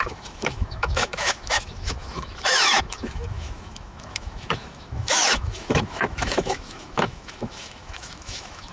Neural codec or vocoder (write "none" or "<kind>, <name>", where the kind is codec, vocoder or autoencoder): autoencoder, DAC-VAE